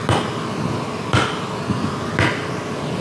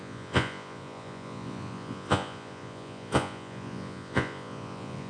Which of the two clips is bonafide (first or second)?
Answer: first